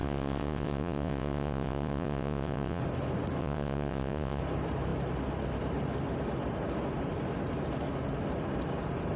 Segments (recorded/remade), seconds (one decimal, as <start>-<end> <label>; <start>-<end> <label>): 0.0-2.8 remade; 2.8-3.4 recorded; 3.4-4.4 remade; 4.4-9.2 recorded